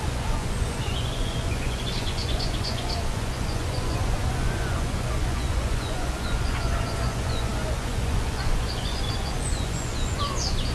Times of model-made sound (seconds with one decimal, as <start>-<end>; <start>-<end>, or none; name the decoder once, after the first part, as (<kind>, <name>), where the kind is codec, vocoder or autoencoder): 0.0-10.7 (vocoder, Vocos)